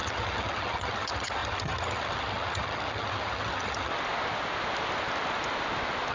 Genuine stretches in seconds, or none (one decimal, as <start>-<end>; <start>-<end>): 3.9-6.1

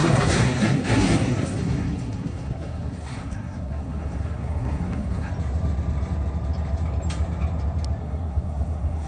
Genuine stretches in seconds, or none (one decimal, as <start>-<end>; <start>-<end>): 5.3-8.0

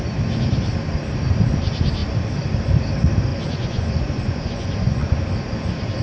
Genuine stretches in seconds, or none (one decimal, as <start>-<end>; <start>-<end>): 0.0-3.3; 5.1-6.0

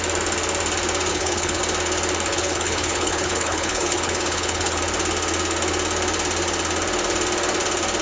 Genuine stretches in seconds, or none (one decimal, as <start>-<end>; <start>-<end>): 0.0-1.1; 1.6-2.3; 4.8-8.0

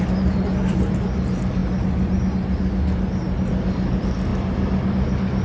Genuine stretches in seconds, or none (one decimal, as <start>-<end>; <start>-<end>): 0.0-5.4

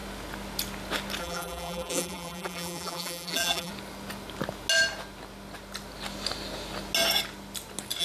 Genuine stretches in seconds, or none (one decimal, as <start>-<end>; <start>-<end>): 0.0-1.2; 3.7-8.0

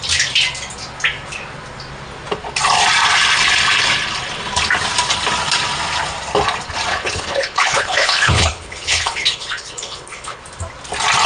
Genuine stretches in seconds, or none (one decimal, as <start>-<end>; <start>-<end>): 0.0-6.9; 10.4-11.3